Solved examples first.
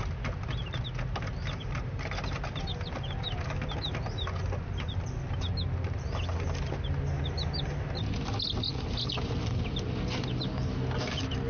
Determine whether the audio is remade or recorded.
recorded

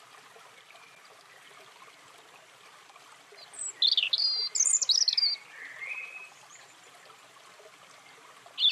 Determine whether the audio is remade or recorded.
recorded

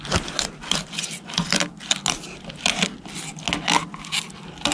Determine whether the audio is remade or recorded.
recorded